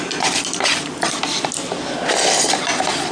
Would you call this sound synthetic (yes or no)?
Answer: no